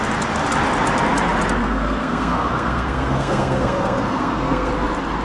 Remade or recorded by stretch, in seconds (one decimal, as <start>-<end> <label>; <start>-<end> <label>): 0.0-1.6 recorded; 1.6-4.7 remade; 4.7-5.2 recorded